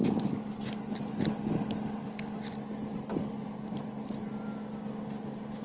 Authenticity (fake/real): real